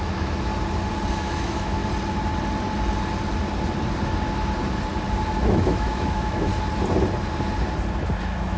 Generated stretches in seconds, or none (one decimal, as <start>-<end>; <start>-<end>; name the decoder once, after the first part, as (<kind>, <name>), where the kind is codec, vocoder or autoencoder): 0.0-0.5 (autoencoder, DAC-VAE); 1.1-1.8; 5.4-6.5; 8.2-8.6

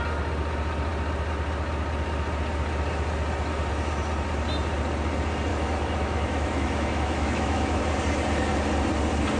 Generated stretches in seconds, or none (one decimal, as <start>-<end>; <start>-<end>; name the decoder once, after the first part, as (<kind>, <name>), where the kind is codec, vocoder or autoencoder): 5.5-7.8 (autoencoder, DAC-VAE)

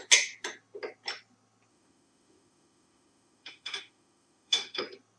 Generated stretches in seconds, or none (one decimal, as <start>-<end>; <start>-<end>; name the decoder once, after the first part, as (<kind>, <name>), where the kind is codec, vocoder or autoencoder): 1.7-4.8 (autoencoder, DAC-VAE)

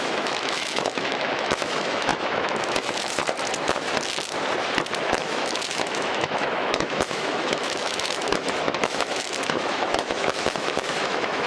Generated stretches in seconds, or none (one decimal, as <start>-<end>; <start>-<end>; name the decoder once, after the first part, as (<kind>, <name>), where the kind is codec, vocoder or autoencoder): 0.0-3.2 (autoencoder, DAC-VAE); 5.0-11.5

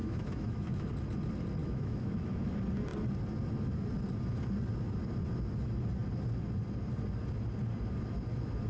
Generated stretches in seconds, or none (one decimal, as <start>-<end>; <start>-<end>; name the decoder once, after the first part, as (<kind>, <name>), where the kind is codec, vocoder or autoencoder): 0.0-0.9 (autoencoder, DAC-VAE); 1.6-2.5

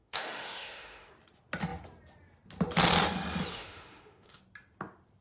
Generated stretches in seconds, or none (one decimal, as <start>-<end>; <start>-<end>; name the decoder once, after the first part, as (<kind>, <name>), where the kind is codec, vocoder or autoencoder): 0.0-1.1 (autoencoder, DAC-VAE); 3.5-4.4